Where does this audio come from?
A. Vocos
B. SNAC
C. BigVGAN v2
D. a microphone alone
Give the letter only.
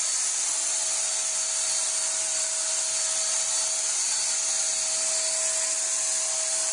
D